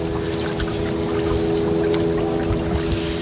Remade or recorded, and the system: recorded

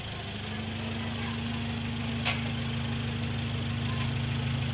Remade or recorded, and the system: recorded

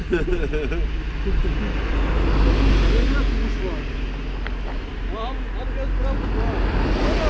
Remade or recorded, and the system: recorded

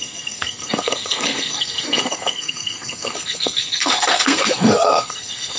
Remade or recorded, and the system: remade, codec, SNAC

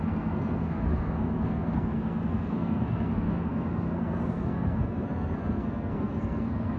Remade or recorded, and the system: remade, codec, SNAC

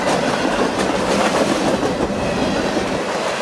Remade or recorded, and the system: recorded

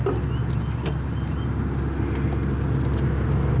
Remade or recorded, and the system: recorded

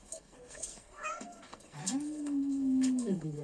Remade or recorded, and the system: remade, codec, SNAC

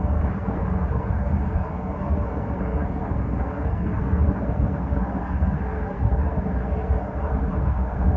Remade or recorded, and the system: remade, codec, SNAC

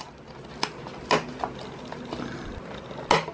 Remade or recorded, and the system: recorded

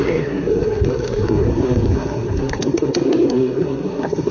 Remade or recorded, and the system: remade, codec, SNAC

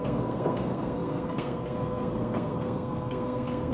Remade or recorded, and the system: remade, codec, SNAC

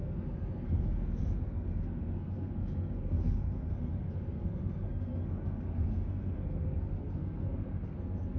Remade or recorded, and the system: remade, codec, SNAC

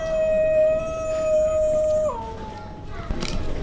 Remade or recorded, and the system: recorded